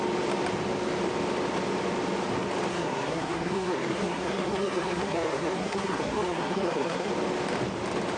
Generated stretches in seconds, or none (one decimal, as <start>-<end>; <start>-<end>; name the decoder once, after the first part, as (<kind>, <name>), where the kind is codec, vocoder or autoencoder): 2.7-7.1 (codec, SNAC)